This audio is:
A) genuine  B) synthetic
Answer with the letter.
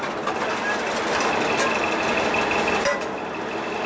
A